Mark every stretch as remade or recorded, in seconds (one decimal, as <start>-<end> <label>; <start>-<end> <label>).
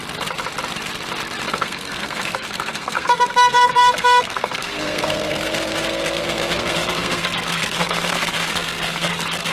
0.0-1.5 recorded; 1.5-9.5 remade